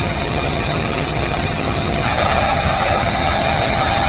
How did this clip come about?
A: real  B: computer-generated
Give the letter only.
B